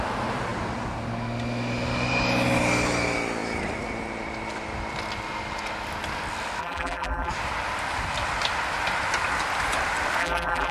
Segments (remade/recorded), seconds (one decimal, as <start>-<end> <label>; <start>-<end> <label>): 0.0-6.6 recorded; 6.6-7.3 remade; 7.3-10.2 recorded; 10.2-10.7 remade